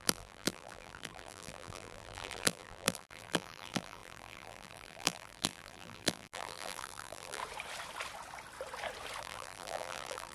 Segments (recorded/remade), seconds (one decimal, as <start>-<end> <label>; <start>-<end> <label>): 0.0-7.4 remade; 7.4-9.2 recorded; 9.2-10.3 remade